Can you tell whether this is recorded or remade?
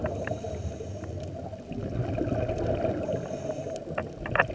recorded